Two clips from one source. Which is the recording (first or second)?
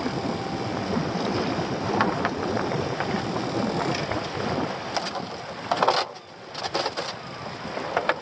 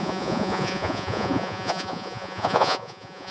first